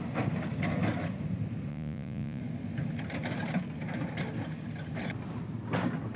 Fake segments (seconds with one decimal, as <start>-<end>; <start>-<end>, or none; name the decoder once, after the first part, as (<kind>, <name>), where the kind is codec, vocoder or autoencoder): 1.7-2.4 (vocoder, Vocos)